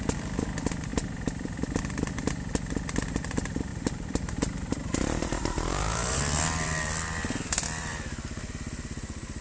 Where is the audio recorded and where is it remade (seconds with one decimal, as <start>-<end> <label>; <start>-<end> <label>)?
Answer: 0.0-3.7 recorded; 3.7-6.2 remade; 6.2-9.4 recorded